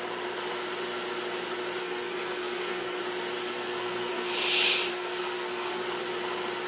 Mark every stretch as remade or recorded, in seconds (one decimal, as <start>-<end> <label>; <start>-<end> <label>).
0.0-1.8 recorded; 1.8-3.0 remade; 3.0-3.4 recorded; 3.4-4.3 remade; 4.3-4.9 recorded; 4.9-5.8 remade; 5.8-6.7 recorded